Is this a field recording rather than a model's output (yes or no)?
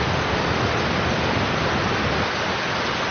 yes